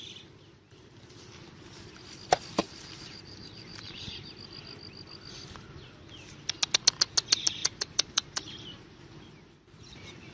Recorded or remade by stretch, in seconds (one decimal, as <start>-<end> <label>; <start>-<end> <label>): 0.0-2.6 recorded; 2.6-4.3 remade; 4.3-7.6 recorded; 7.6-8.6 remade; 8.6-10.3 recorded